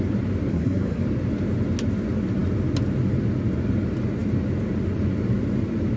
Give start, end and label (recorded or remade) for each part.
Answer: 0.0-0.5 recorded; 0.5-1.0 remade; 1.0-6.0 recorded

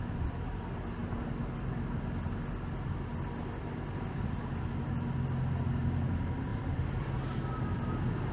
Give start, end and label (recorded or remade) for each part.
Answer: 0.0-6.5 recorded; 6.5-7.4 remade; 7.4-8.3 recorded

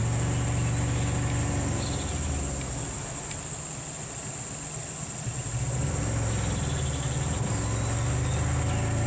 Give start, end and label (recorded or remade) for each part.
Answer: 0.0-9.1 recorded

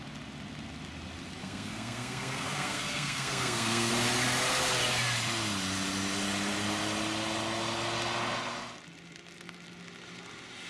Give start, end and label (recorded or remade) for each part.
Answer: 0.0-1.4 recorded; 1.4-3.9 remade; 3.9-10.7 recorded